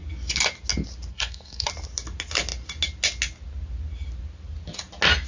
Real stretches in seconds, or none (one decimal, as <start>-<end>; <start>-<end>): 0.0-1.1; 1.7-5.3